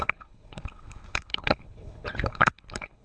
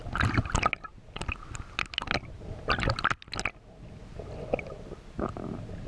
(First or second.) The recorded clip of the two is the second